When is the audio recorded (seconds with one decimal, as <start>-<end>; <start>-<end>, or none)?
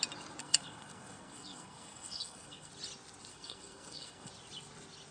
0.0-0.4; 2.7-3.3; 4.3-5.1